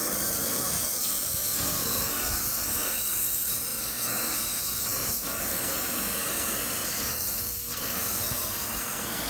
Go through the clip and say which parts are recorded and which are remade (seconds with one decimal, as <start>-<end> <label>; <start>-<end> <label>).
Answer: 0.0-9.3 remade